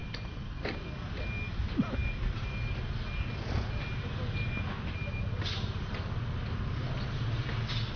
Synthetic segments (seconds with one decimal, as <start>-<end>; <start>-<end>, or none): none